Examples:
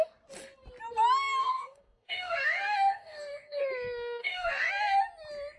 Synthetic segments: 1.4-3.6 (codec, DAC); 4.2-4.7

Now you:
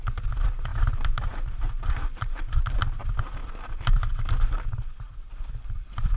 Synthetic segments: 0.7-2.6 (vocoder, BigVGAN v2); 3.4-4.1

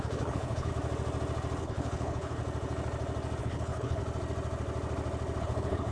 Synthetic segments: 0.0-0.7 (codec, HILCodec); 1.6-2.4; 3.4-4.0; 5.4-5.9

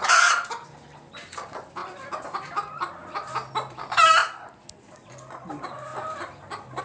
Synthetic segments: none

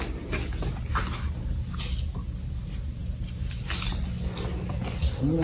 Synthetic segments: none